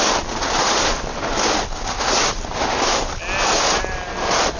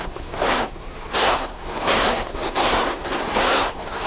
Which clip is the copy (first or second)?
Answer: second